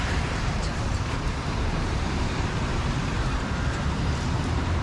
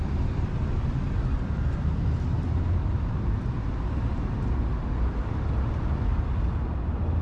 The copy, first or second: first